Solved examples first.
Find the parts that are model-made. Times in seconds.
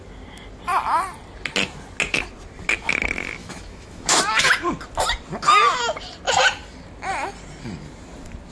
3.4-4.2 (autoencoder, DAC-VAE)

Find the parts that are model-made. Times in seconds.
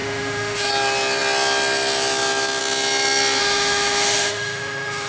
0.0-0.7 (autoencoder, DAC-VAE); 3.4-5.1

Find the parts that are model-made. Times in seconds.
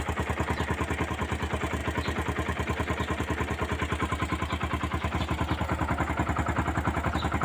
none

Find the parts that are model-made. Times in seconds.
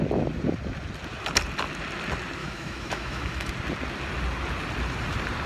2.4-3.5 (autoencoder, DAC-VAE)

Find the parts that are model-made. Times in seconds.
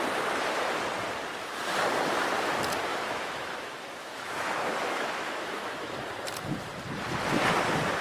2.9-5.9 (autoencoder, DAC-VAE)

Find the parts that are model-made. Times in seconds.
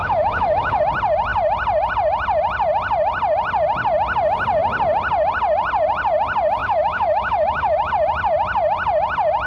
0.0-0.8 (autoencoder, DAC-VAE); 6.6-7.9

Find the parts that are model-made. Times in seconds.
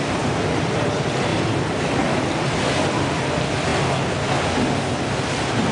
none